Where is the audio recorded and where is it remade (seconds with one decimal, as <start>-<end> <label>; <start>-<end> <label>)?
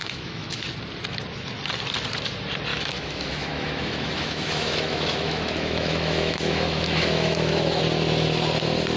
0.0-0.6 remade; 0.6-2.7 recorded; 2.7-7.8 remade; 7.8-9.0 recorded